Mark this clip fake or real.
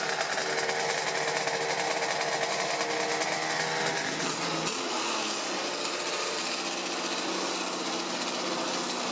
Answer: real